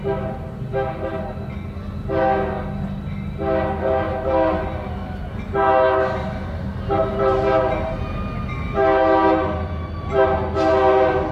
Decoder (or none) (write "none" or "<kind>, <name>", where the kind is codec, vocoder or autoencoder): none